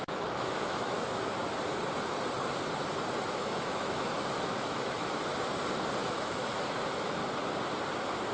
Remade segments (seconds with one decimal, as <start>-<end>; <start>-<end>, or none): 0.0-1.4; 3.3-5.3; 6.1-7.2